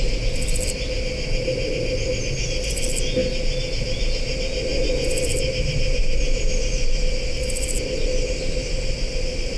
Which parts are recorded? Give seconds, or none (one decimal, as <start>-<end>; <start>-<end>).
0.0-9.6